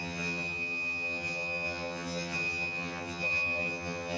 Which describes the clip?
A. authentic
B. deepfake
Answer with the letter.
B